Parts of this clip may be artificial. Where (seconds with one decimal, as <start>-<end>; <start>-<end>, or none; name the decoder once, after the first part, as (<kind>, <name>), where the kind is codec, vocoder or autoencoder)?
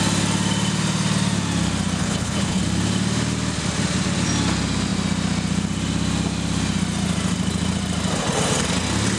2.0-2.6 (codec, HILCodec)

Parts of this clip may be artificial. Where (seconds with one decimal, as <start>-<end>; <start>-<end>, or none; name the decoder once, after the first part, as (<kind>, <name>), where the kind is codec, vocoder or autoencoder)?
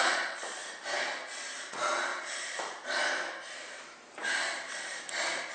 0.0-0.6 (vocoder, Vocos); 1.7-2.1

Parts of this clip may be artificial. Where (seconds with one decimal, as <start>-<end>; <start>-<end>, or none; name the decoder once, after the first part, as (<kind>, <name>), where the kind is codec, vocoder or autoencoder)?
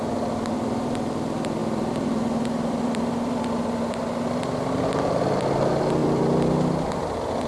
1.6-5.4 (vocoder, BigVGAN v2); 6.0-7.5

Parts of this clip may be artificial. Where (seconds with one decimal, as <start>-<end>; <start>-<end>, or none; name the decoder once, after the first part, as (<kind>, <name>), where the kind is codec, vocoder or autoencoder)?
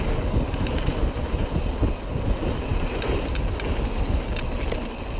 none